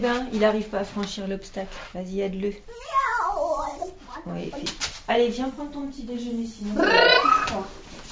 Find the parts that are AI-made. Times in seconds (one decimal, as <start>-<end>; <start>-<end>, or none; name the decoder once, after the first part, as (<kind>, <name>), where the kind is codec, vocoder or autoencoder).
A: 3.1-5.1 (vocoder, BigVGAN v2)